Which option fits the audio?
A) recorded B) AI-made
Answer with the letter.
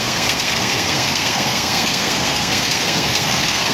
B